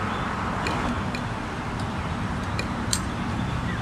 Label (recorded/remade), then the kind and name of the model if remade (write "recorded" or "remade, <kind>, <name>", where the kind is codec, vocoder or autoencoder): remade, vocoder, BigVGAN v2